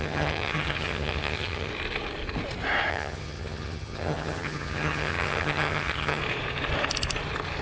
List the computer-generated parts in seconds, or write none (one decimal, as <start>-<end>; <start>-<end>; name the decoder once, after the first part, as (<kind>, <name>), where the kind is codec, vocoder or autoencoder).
0.0-1.7 (vocoder, HiFi-GAN); 2.9-6.2